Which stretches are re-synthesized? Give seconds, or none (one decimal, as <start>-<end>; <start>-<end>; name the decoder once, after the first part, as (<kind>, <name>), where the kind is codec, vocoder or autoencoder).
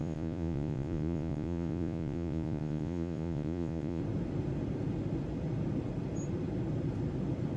0.0-4.0 (vocoder, Vocos)